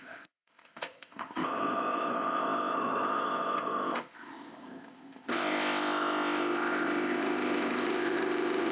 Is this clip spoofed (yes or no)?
yes